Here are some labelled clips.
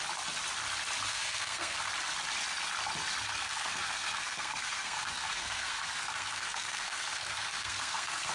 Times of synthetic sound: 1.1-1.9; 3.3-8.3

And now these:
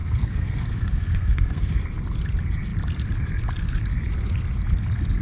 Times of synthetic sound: 0.0-1.8

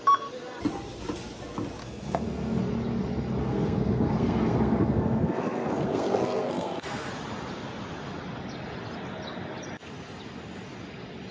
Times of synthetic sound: 1.8-2.6; 3.4-7.1